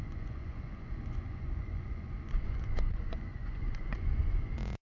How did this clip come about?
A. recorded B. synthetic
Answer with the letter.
B